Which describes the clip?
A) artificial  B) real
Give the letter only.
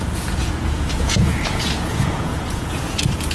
A